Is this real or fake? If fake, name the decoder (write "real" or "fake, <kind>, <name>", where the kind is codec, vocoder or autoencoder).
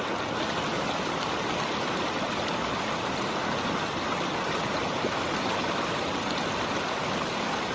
real